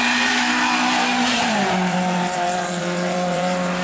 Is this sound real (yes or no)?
no